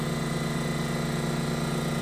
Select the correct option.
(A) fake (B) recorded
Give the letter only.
B